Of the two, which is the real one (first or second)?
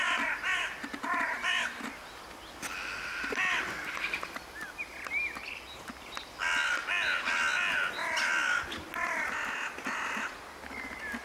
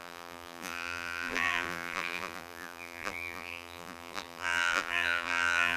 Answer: first